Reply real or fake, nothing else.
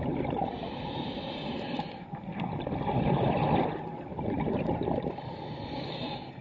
real